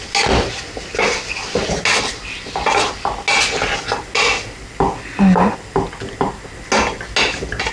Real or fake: real